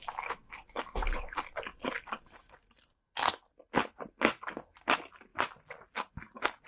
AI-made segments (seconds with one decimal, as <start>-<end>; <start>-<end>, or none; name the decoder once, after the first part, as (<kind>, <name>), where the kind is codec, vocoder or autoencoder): none